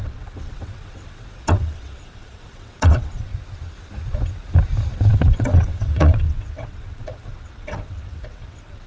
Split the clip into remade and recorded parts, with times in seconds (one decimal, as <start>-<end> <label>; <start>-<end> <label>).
0.0-3.3 remade; 3.3-5.1 recorded; 5.1-8.9 remade